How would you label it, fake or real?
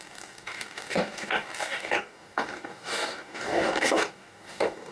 fake